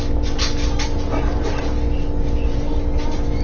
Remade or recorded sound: recorded